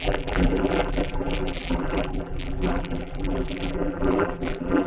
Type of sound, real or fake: fake